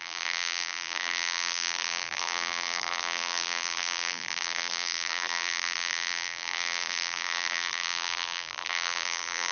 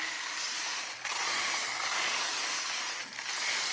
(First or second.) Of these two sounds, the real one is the second